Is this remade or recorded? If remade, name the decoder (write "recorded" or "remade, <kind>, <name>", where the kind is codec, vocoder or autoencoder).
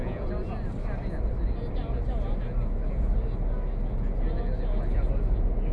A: recorded